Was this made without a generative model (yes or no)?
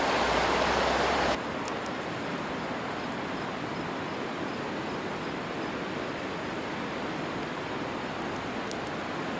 yes